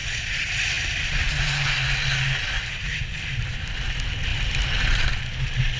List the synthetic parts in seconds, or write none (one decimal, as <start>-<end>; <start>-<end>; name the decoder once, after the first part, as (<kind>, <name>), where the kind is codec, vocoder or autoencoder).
none